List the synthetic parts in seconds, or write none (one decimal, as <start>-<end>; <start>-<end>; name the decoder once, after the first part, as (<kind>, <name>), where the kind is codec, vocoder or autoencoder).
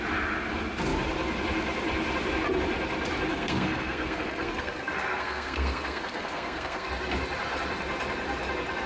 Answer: 3.3-6.9 (codec, SNAC)